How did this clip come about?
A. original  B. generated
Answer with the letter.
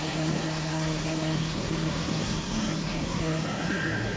B